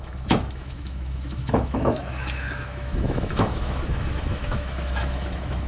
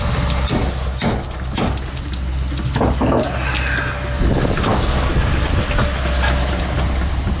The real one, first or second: second